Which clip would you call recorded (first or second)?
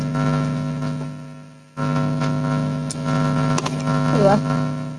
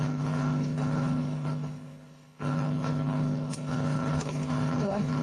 first